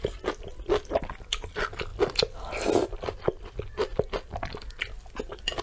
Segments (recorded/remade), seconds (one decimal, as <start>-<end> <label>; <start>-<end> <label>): 0.0-5.6 recorded